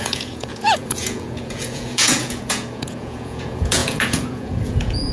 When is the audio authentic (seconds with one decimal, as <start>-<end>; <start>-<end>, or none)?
none